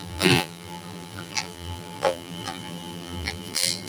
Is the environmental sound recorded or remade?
remade